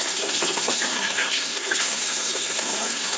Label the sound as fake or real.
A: fake